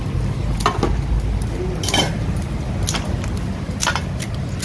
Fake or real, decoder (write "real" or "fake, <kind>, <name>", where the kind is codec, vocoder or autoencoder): real